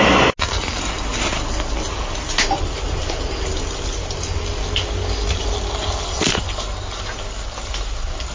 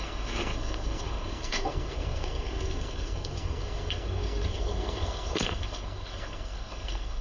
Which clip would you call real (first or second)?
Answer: first